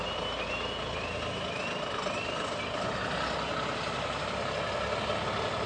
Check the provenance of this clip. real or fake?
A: real